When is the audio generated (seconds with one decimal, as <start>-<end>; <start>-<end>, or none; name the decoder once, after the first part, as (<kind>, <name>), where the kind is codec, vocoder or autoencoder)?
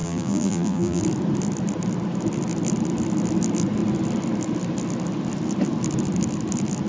0.0-1.0 (vocoder, BigVGAN v2)